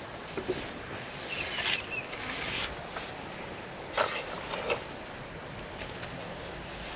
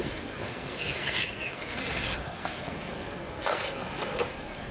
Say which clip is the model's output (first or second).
second